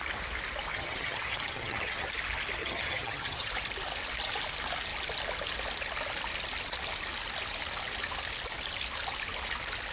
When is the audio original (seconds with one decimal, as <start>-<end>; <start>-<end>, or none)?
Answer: 0.0-0.7; 2.1-2.6; 3.5-9.9